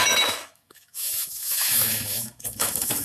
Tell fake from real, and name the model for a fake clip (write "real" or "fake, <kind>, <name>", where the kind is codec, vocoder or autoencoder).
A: fake, autoencoder, DAC-VAE